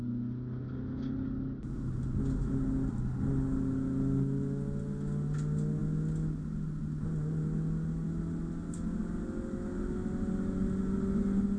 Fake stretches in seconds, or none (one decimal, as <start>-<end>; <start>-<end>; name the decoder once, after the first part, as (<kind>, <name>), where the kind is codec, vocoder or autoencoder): none